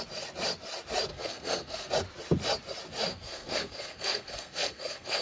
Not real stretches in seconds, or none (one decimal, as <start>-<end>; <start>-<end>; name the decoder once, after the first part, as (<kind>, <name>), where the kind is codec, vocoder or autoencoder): 1.1-1.9 (codec, SNAC); 3.1-5.2

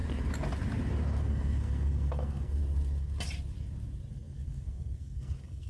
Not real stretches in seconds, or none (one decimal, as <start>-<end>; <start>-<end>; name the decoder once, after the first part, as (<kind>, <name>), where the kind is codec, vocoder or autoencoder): 1.2-2.6 (codec, SNAC); 4.1-5.7

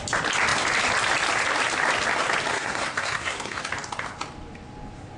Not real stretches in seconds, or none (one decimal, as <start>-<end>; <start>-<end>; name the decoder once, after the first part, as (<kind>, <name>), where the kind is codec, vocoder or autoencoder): 2.5-3.6 (codec, SNAC)